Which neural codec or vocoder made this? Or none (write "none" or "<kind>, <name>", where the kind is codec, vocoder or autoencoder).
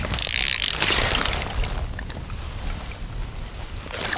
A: none